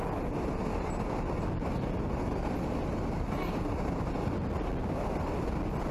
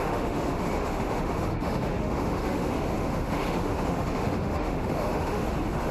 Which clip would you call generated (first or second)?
second